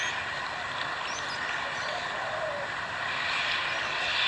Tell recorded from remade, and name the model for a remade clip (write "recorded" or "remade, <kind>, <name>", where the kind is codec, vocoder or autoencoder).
recorded